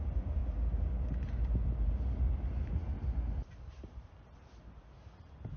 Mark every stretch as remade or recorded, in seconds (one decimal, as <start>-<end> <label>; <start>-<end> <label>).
0.0-5.6 recorded